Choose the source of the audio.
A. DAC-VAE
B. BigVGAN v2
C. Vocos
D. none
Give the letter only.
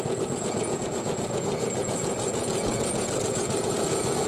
C